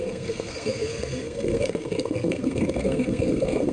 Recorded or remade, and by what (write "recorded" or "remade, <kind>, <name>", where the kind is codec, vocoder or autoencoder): remade, codec, SNAC